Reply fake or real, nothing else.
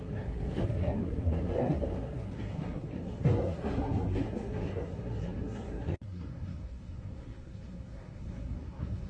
fake